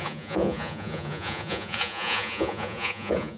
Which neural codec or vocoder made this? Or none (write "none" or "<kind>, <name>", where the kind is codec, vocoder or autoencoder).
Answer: vocoder, Vocos